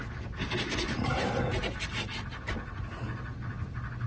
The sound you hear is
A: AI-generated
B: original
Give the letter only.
B